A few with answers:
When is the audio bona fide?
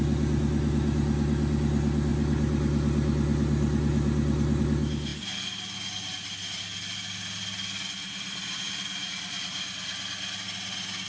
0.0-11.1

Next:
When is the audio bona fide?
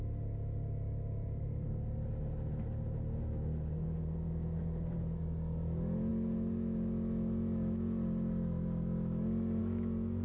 0.0-10.2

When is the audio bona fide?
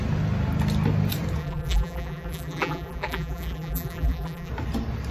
0.0-1.4; 4.5-5.1